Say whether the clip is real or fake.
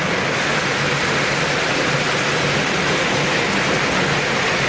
real